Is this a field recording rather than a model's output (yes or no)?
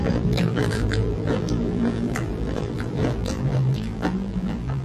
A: no